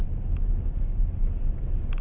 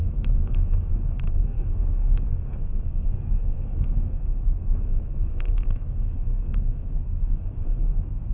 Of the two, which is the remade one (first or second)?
second